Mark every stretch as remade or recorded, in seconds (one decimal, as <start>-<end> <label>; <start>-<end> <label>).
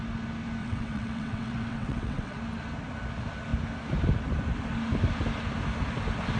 0.0-0.6 recorded; 0.6-2.4 remade; 2.4-6.4 recorded